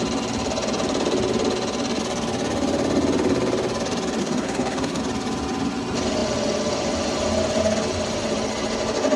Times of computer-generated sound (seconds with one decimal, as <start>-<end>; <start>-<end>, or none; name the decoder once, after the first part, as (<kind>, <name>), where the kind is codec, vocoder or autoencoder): 4.2-5.0 (codec, SNAC)